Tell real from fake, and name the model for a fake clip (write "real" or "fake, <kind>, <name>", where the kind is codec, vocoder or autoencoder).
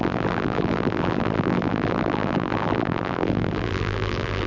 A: fake, vocoder, BigVGAN v2